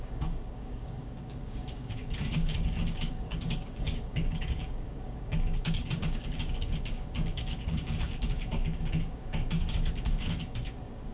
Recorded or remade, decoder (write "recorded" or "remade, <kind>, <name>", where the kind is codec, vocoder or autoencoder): remade, codec, DAC